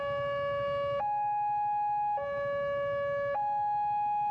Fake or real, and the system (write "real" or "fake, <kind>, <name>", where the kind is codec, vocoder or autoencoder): real